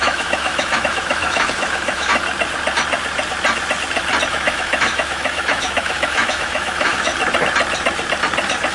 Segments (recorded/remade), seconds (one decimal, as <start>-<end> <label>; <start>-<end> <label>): 0.0-2.1 remade; 2.1-4.3 recorded; 4.3-7.1 remade; 7.1-8.7 recorded